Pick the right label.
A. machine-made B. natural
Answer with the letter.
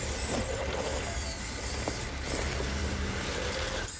B